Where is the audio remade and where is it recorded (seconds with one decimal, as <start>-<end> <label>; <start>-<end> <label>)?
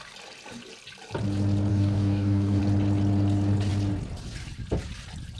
0.0-1.7 recorded; 1.7-2.6 remade; 2.6-5.4 recorded